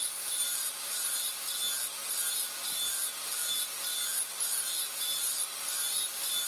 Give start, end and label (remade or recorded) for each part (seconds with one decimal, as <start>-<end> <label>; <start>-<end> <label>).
0.0-0.5 recorded; 0.5-1.4 remade; 1.4-6.5 recorded